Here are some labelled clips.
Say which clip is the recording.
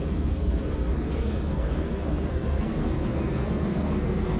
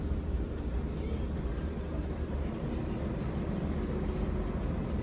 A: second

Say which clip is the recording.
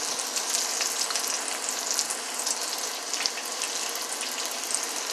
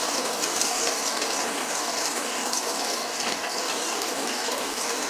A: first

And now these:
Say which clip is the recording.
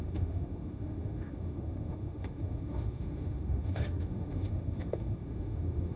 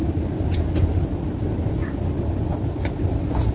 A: second